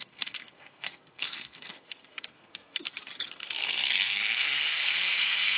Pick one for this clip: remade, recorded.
remade